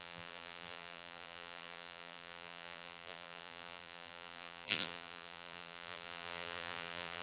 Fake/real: fake